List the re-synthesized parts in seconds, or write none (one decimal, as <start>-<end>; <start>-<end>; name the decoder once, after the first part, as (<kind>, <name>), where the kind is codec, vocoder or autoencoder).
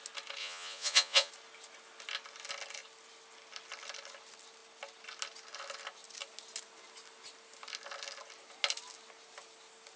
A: 0.4-1.3 (vocoder, Vocos)